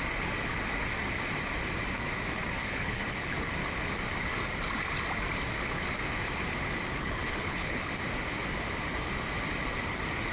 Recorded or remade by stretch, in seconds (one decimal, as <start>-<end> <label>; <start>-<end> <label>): 0.0-2.6 recorded; 2.6-3.5 remade; 3.5-7.0 recorded; 7.0-7.9 remade; 7.9-10.3 recorded